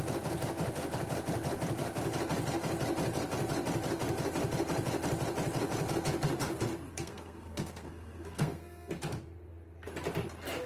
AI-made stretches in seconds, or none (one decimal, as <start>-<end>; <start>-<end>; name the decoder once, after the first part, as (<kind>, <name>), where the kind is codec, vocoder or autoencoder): 6.9-9.0 (codec, SNAC)